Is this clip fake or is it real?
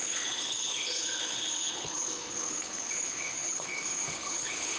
fake